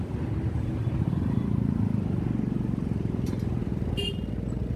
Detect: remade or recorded recorded